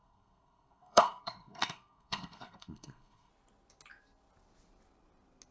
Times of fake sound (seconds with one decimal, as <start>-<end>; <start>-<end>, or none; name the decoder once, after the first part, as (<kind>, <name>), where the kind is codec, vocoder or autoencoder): 0.0-3.3 (codec, SNAC)